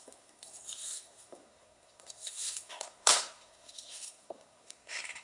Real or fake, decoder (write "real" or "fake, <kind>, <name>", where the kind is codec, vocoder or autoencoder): fake, codec, SNAC